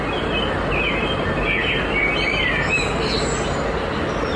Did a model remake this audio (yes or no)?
no